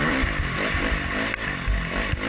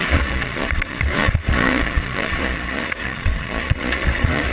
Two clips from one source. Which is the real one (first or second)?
first